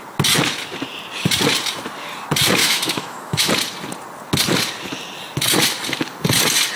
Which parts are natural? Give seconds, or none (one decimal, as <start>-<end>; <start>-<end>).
0.0-2.6; 3.5-6.8